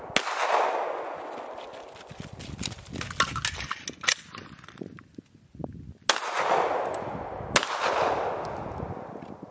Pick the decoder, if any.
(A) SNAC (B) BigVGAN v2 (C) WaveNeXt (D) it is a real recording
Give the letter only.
D